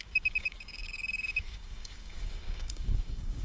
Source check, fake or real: fake